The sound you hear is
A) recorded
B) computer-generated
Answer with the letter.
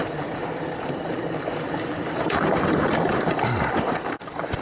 B